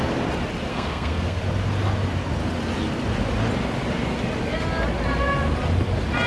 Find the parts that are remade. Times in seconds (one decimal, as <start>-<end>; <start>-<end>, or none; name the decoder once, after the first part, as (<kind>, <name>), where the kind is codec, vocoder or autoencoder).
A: 0.7-1.4 (codec, SNAC)